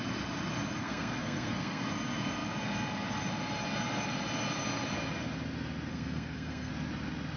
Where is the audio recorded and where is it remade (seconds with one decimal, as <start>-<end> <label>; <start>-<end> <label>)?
0.0-0.8 recorded; 0.8-1.8 remade; 1.8-5.9 recorded; 5.9-6.7 remade; 6.7-7.4 recorded